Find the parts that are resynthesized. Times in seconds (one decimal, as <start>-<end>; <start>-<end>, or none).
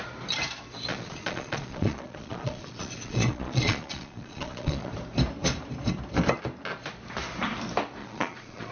0.9-4.9; 8.0-8.7